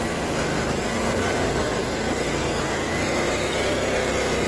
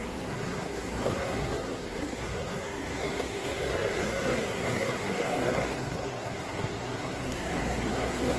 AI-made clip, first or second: second